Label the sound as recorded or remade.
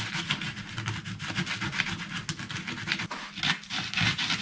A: recorded